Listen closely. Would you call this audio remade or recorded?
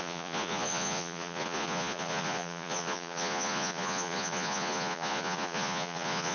remade